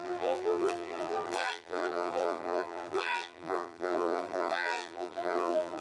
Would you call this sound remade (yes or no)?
yes